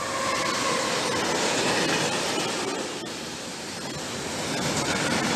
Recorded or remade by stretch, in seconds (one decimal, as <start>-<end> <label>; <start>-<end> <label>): 0.0-5.4 recorded